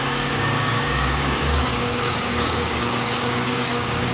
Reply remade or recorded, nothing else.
remade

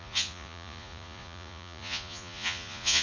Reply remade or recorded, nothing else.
remade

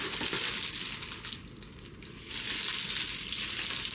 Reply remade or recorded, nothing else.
recorded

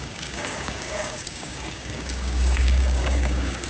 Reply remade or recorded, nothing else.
remade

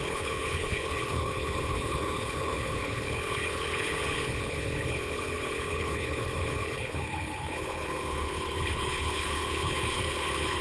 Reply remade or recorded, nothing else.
remade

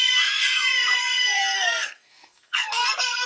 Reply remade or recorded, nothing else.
remade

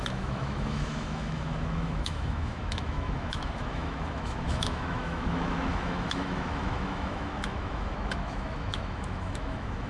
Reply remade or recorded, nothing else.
remade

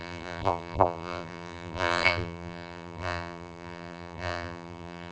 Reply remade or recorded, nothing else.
remade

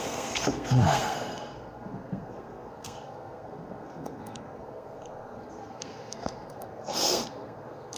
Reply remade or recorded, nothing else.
remade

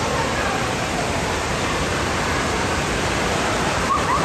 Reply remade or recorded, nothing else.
remade